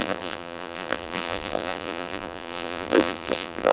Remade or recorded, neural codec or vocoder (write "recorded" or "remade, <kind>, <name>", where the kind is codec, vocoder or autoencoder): remade, vocoder, BigVGAN v2